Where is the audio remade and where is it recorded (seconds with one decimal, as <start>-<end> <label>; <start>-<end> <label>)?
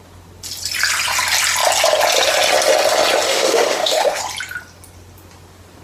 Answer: 0.0-3.3 recorded; 3.3-4.2 remade; 4.2-5.8 recorded